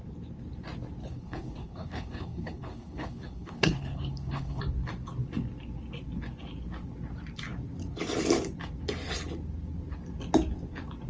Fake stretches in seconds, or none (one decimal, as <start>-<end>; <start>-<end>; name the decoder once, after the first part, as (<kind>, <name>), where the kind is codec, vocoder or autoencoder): 1.0-4.6 (codec, HILCodec)